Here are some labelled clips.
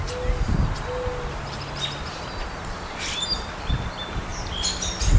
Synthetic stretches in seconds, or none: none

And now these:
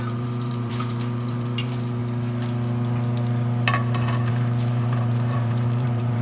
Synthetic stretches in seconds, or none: 0.0-2.0 (vocoder, BigVGAN v2); 4.3-6.2

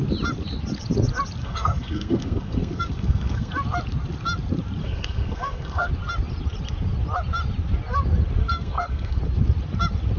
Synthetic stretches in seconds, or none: 1.4-3.5 (codec, SNAC); 4.8-5.9; 8.4-9.2

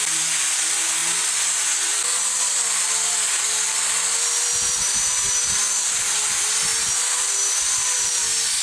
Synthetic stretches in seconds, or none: none

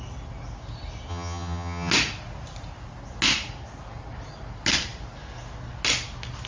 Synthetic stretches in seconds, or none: 1.1-1.9 (vocoder, HiFi-GAN)

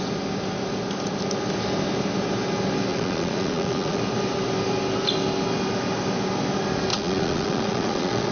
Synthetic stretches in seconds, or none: 2.9-4.0 (vocoder, Vocos); 6.9-8.3